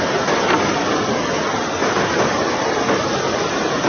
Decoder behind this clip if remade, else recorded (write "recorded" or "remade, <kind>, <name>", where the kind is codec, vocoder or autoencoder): remade, vocoder, BigVGAN v2